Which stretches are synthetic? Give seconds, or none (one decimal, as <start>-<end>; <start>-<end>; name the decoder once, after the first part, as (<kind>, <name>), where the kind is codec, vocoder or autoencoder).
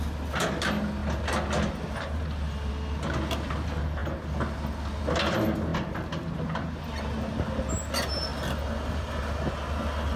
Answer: none